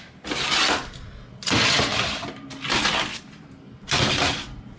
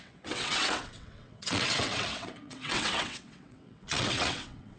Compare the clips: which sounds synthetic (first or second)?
second